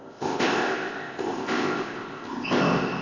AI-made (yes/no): yes